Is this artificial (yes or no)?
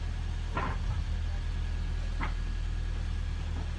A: no